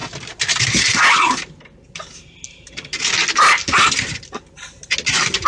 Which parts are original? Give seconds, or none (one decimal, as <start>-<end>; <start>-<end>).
0.0-5.5